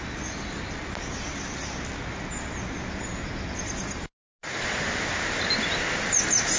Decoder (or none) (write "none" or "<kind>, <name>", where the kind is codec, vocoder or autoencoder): none